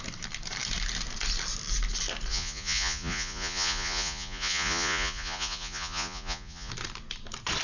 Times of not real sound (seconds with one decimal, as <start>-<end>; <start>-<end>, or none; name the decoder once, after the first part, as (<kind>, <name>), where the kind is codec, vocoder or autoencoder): 2.3-6.7 (vocoder, Vocos)